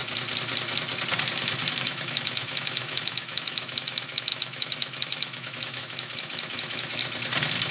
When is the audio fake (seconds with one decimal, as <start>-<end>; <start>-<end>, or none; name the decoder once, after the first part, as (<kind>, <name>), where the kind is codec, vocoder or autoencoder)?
1.8-7.0 (autoencoder, DAC-VAE)

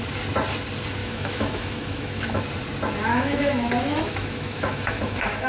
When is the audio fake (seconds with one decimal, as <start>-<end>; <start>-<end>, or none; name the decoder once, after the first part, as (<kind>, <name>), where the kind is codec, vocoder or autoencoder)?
1.0-2.4 (autoencoder, DAC-VAE); 3.1-5.5

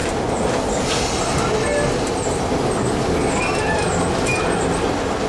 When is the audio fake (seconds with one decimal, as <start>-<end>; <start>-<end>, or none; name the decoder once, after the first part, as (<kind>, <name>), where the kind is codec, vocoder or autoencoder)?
none